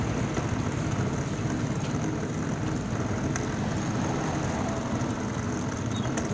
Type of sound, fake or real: real